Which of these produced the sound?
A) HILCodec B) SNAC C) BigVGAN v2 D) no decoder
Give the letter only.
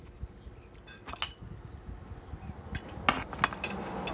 D